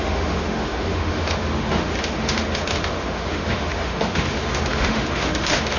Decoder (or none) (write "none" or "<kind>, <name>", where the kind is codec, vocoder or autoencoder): autoencoder, DAC-VAE